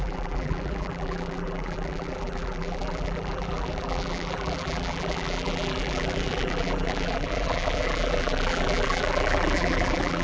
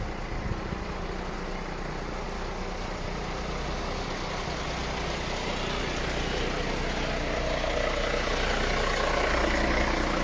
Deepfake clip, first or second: first